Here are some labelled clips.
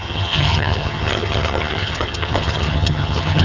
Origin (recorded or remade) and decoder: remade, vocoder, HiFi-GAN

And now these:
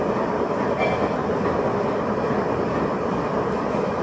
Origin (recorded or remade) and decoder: recorded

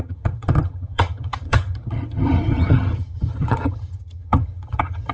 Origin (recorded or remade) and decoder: remade, vocoder, HiFi-GAN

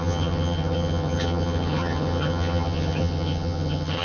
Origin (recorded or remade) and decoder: remade, vocoder, HiFi-GAN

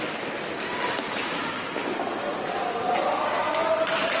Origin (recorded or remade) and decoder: recorded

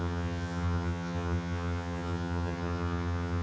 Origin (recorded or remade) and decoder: remade, vocoder, HiFi-GAN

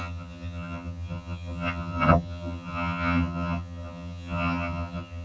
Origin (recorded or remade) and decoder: remade, vocoder, HiFi-GAN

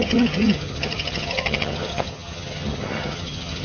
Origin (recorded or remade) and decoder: remade, vocoder, HiFi-GAN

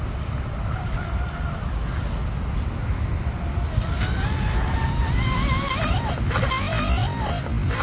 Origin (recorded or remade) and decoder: recorded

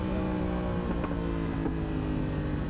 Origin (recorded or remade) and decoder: recorded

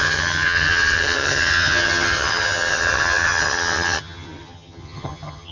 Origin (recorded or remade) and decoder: remade, vocoder, HiFi-GAN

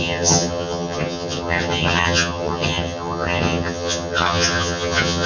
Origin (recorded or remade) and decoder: remade, vocoder, HiFi-GAN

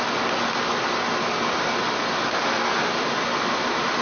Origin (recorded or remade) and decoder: recorded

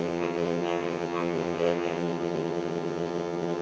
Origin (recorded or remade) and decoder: remade, vocoder, HiFi-GAN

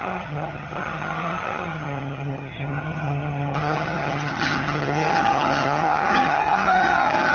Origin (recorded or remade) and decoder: remade, vocoder, HiFi-GAN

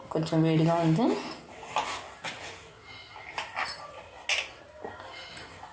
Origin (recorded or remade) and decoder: recorded